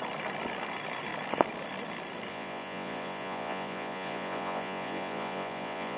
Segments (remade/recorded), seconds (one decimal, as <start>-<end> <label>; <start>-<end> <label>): 0.0-2.3 recorded; 2.3-6.0 remade